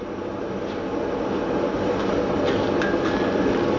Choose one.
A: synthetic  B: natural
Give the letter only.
B